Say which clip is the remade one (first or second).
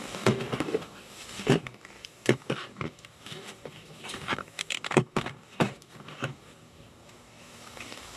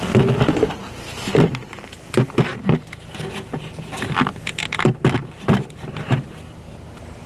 first